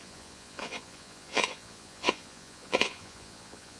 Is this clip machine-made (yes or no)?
yes